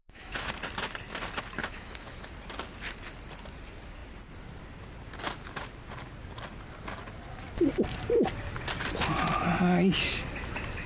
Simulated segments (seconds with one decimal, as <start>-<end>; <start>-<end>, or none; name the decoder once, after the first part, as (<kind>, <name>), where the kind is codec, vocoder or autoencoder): 0.0-0.5 (autoencoder, DAC-VAE); 1.6-2.3